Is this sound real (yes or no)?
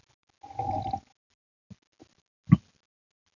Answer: yes